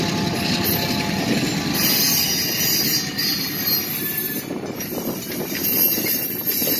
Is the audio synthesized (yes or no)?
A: no